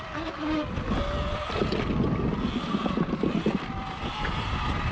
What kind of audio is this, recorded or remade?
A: recorded